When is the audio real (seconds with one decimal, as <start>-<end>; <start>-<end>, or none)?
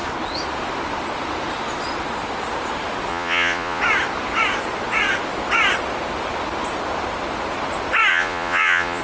0.0-3.1; 3.8-8.1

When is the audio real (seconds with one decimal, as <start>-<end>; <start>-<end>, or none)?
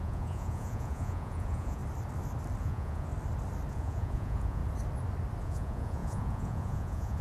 1.8-2.6; 3.1-3.7; 4.6-5.4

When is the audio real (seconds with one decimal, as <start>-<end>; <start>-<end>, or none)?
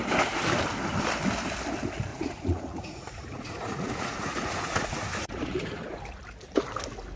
0.0-2.1; 6.0-7.2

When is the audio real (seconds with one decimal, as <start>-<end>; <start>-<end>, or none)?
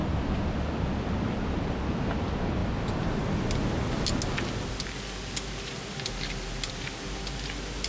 0.0-7.9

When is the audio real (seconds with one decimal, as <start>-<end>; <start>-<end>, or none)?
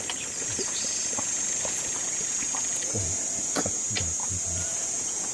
0.0-0.5; 3.7-4.2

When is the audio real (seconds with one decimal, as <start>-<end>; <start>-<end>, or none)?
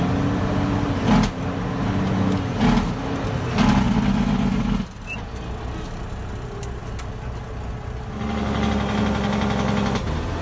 0.0-10.4